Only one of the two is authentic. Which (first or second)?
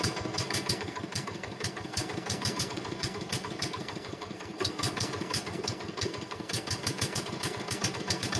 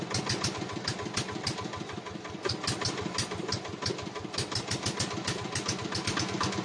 second